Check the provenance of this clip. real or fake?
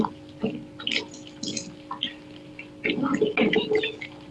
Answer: real